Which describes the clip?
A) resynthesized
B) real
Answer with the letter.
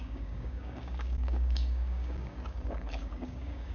A